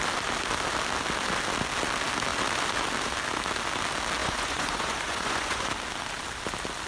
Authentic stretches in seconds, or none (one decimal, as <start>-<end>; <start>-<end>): 0.0-4.2; 5.7-6.9